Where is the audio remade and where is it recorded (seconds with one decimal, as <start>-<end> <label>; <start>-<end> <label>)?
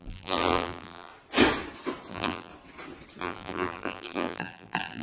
0.0-1.1 remade; 1.1-2.1 recorded; 2.1-2.5 remade; 2.5-3.2 recorded; 3.2-5.0 remade